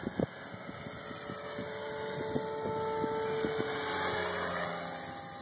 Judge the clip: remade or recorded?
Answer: recorded